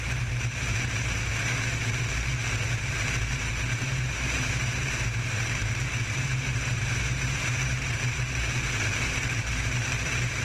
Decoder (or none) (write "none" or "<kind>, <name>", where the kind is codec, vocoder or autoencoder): vocoder, BigVGAN v2